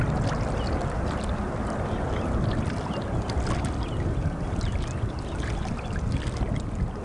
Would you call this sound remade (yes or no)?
no